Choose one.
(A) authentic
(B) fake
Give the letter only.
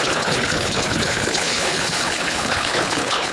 B